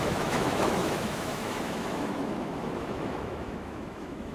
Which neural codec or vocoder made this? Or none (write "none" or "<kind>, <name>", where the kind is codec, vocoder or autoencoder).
autoencoder, DAC-VAE